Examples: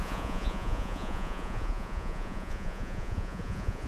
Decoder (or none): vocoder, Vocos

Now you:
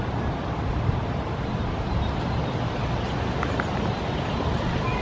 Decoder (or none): none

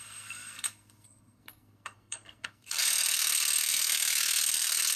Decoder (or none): codec, SNAC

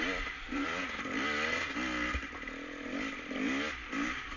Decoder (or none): none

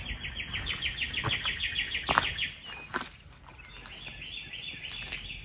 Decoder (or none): none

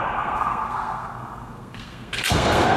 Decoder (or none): codec, SNAC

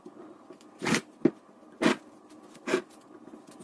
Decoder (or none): none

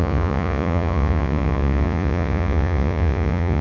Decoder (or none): vocoder, Vocos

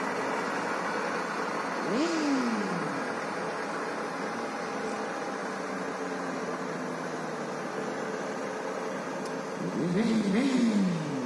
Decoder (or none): none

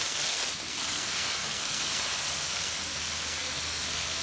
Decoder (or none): codec, SNAC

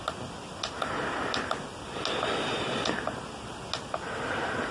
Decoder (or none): none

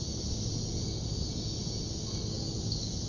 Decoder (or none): none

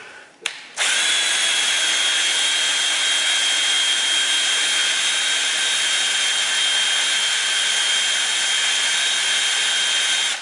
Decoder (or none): none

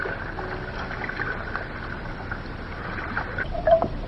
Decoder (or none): none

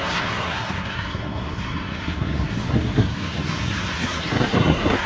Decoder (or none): codec, SNAC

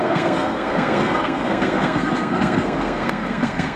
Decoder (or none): codec, SNAC